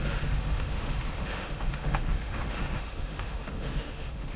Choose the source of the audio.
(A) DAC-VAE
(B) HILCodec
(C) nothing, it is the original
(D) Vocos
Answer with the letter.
A